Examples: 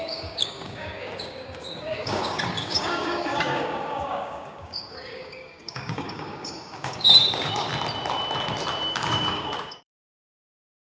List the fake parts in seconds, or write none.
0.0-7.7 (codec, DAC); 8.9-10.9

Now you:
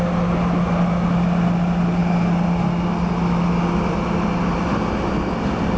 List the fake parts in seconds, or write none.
none

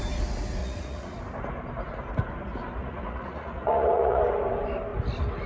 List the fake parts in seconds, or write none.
0.6-1.2 (vocoder, Vocos); 2.8-4.2